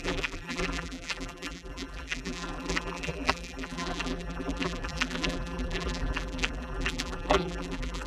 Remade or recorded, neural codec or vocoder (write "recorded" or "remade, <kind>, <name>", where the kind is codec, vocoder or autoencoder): remade, vocoder, BigVGAN v2